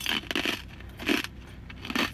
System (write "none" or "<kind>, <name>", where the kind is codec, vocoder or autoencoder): none